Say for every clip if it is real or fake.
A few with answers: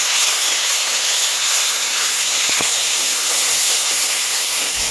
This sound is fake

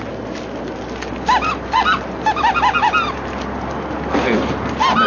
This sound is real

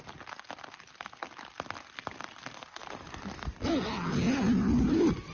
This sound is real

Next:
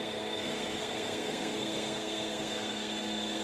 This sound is fake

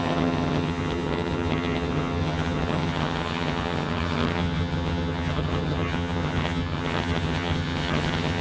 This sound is fake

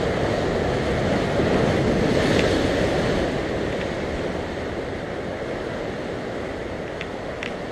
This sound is real